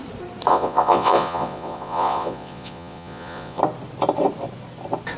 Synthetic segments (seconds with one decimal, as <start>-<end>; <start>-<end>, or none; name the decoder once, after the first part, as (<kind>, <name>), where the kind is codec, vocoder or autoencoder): 0.5-3.6 (vocoder, Vocos)